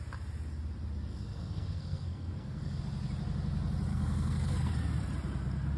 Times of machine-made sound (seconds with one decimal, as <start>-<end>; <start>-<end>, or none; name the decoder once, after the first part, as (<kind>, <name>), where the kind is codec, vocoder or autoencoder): 1.1-2.8 (codec, SNAC); 3.9-4.7